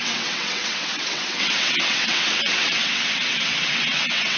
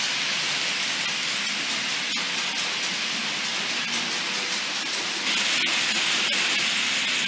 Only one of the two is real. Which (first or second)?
second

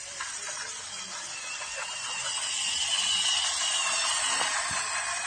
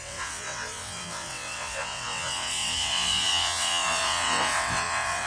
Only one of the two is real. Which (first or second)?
first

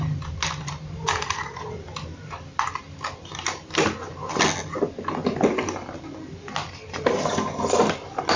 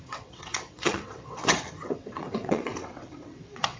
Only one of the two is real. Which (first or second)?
first